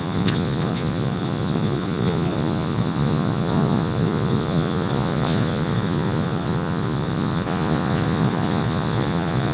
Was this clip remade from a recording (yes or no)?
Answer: yes